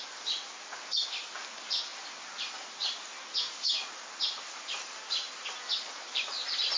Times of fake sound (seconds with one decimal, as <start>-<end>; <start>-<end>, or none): none